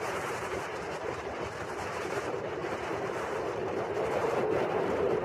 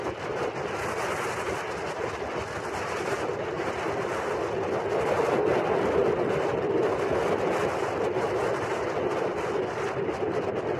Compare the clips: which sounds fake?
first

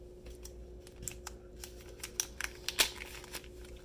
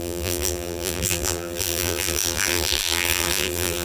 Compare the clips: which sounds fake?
second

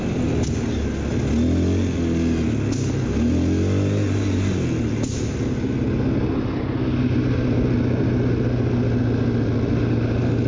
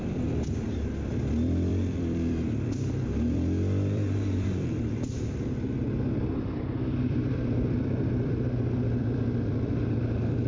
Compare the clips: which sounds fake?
second